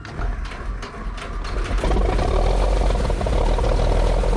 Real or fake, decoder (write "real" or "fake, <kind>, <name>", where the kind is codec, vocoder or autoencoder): real